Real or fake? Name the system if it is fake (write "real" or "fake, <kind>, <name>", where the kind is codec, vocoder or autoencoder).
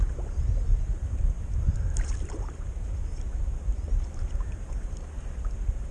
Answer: fake, vocoder, BigVGAN v2